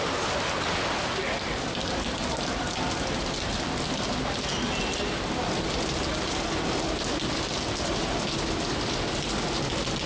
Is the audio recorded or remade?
recorded